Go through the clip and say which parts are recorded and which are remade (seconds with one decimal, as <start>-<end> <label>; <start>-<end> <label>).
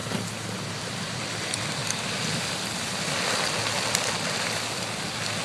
0.0-1.4 remade; 1.4-1.8 recorded; 1.8-4.8 remade; 4.8-5.4 recorded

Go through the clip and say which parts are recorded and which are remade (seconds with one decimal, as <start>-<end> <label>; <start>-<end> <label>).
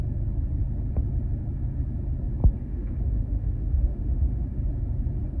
0.0-2.6 recorded; 2.6-4.4 remade; 4.4-5.4 recorded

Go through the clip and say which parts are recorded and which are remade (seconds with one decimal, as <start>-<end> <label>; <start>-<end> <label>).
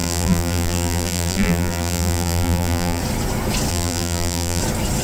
0.0-3.0 remade; 3.0-3.7 recorded; 3.7-4.6 remade; 4.6-5.0 recorded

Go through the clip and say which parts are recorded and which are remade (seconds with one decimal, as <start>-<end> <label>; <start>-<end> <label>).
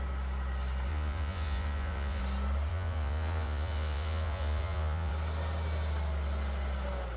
0.0-0.9 recorded; 0.9-2.2 remade; 2.2-2.7 recorded; 2.7-5.1 remade; 5.1-7.2 recorded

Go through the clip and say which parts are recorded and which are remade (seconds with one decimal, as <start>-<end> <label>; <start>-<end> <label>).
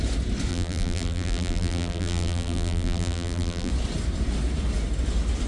0.0-0.5 recorded; 0.5-3.7 remade; 3.7-5.5 recorded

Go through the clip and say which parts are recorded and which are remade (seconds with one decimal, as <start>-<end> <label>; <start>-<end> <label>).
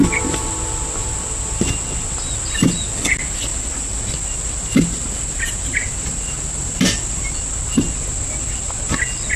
0.0-3.5 recorded; 3.5-8.5 remade; 8.5-9.4 recorded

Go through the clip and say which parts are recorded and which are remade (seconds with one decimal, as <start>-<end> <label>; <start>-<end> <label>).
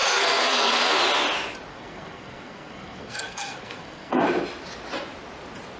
0.0-0.7 remade; 0.7-1.7 recorded; 1.7-4.2 remade; 4.2-5.8 recorded